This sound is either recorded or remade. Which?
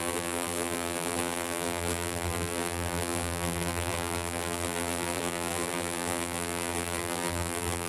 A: remade